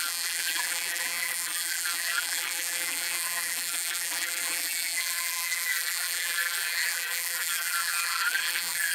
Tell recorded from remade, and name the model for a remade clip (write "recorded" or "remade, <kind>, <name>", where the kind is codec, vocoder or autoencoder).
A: remade, vocoder, BigVGAN v2